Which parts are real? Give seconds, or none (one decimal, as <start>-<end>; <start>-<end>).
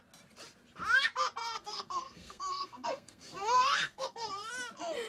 0.0-1.4; 4.5-5.1